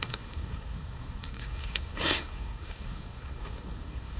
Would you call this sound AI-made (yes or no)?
yes